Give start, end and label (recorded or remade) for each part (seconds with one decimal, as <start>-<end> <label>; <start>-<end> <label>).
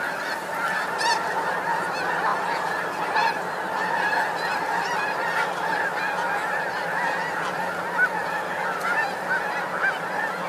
0.0-10.5 recorded